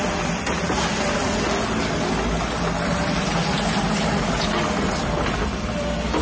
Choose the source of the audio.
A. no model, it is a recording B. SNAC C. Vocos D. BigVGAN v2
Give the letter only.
A